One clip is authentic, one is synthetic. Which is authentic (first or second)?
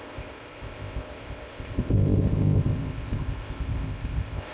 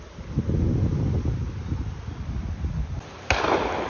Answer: second